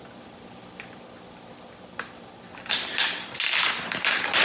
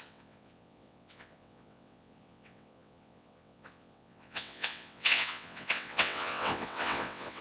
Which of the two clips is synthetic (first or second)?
second